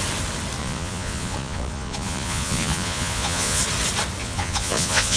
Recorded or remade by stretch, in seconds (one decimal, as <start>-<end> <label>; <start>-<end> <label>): 0.0-0.6 recorded; 0.6-3.6 remade; 3.6-4.2 recorded; 4.2-5.2 remade